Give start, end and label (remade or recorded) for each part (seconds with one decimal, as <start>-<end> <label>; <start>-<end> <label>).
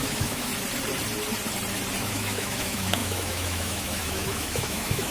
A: 0.0-0.5 remade; 0.5-2.0 recorded; 2.0-5.1 remade